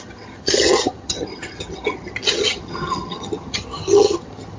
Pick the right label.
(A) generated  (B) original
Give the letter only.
A